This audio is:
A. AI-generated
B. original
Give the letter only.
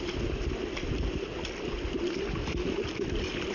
B